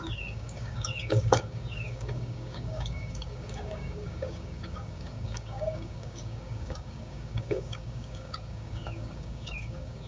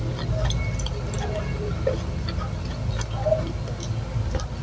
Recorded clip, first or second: second